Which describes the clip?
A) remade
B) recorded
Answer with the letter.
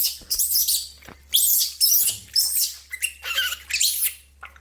B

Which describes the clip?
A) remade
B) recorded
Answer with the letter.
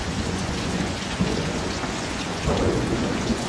A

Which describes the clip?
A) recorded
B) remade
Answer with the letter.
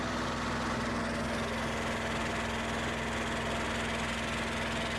A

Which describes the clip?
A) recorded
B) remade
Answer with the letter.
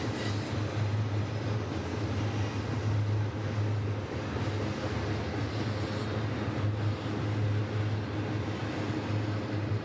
A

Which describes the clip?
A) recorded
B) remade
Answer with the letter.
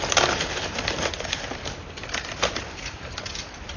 B